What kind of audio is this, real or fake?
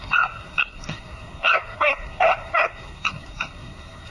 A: fake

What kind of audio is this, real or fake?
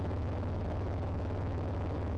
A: fake